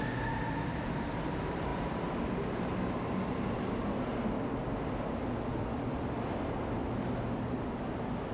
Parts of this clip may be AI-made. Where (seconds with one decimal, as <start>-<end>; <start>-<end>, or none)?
none